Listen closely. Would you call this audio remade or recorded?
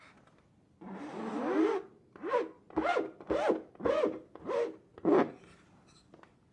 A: recorded